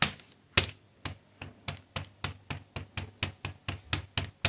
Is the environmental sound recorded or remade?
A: recorded